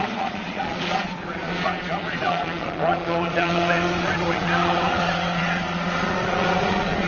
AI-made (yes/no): yes